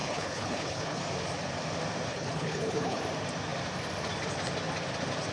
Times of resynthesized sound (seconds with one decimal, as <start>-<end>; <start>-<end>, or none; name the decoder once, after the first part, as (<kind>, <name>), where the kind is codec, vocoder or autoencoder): 0.0-1.0 (codec, HILCodec); 2.1-3.0